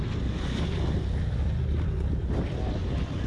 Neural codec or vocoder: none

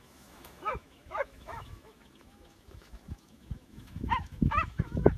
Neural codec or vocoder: autoencoder, DAC-VAE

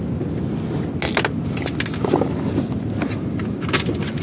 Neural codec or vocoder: none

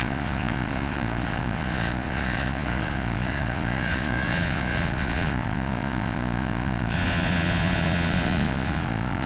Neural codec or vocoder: vocoder, Vocos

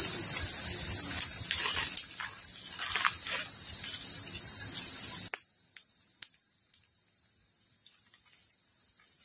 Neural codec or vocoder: none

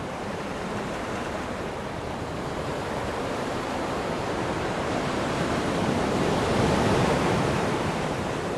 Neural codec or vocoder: vocoder, BigVGAN v2